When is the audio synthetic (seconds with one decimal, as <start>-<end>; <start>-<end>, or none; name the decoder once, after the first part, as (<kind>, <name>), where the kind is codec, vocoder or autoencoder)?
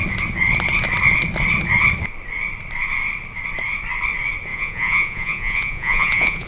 4.5-6.5 (vocoder, Vocos)